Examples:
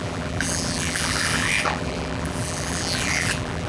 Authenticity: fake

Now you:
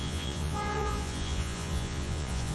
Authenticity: fake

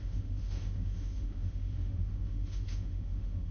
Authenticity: fake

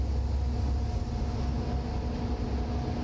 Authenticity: real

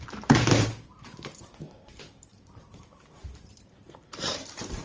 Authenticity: fake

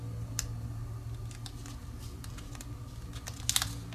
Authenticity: real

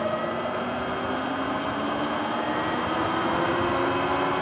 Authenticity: real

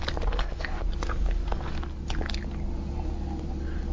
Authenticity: real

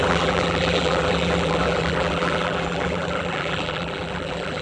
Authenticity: fake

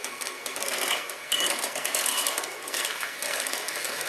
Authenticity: fake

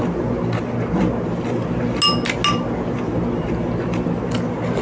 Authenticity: real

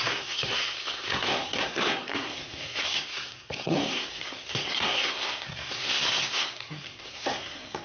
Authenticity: fake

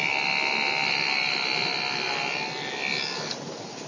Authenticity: real